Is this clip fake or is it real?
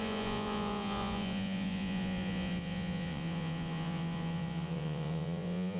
fake